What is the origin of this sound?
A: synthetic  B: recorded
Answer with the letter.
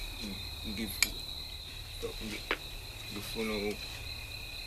B